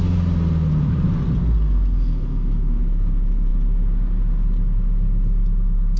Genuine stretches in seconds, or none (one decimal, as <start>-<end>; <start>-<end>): 0.0-1.4; 2.8-6.0